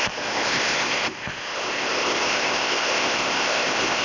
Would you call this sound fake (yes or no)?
yes